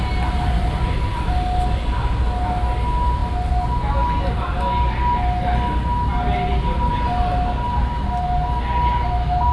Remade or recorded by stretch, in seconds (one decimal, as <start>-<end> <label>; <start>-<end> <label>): 0.0-9.5 recorded